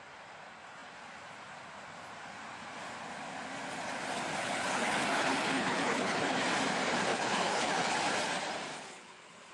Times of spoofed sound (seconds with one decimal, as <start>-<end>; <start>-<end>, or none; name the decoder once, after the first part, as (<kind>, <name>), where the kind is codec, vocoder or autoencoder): 4.4-6.2 (codec, HILCodec); 7.1-7.9; 8.7-9.5